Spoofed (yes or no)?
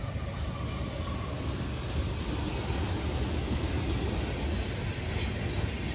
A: no